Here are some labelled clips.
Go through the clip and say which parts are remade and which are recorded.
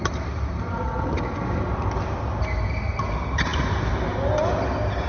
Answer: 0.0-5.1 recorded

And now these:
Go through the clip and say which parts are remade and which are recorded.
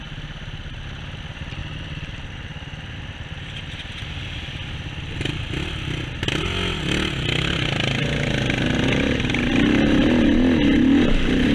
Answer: 0.0-11.5 recorded